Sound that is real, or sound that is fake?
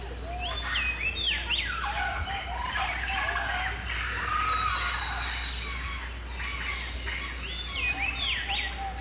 real